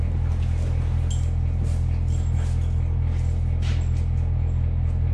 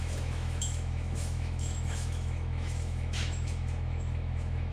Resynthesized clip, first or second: second